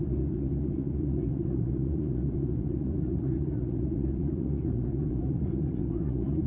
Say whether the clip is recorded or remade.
remade